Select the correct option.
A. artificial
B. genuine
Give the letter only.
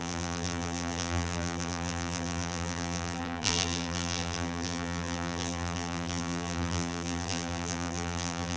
A